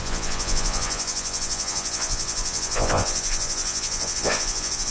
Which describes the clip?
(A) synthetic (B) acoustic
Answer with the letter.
A